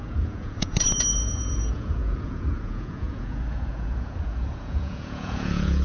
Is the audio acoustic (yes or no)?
no